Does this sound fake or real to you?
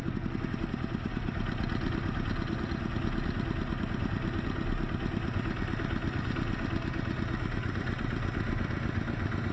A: real